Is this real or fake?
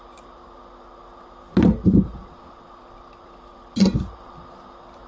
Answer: real